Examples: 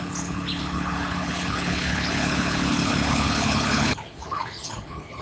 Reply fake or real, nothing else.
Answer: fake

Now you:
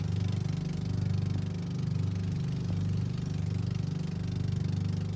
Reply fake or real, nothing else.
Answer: real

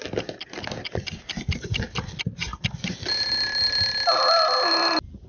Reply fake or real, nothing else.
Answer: real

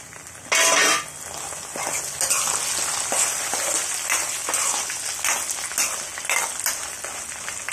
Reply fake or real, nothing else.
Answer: real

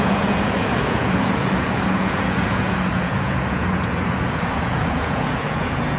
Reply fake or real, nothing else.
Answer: fake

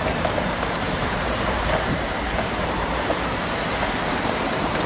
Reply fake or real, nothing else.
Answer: fake